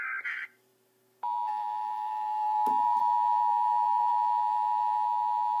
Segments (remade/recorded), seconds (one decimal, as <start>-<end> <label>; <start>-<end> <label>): 0.0-0.7 remade; 0.7-1.5 recorded; 1.5-3.0 remade; 3.0-3.5 recorded; 3.5-4.1 remade; 4.1-5.6 recorded